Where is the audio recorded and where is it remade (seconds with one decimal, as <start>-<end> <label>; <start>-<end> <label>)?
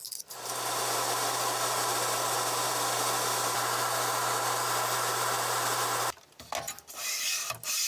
0.0-7.9 recorded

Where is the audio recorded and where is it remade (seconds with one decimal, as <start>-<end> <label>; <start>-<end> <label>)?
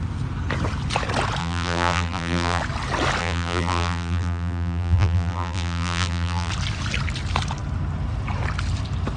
0.0-1.4 recorded; 1.4-2.6 remade; 2.6-3.2 recorded; 3.2-6.5 remade; 6.5-9.2 recorded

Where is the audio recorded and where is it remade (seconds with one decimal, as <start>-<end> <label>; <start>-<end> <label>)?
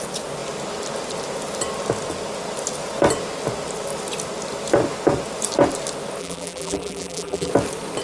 0.0-6.2 recorded; 6.2-7.5 remade; 7.5-8.0 recorded